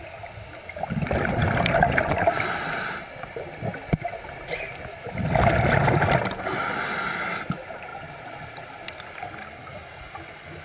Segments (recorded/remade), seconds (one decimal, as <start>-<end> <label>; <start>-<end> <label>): 0.0-10.6 recorded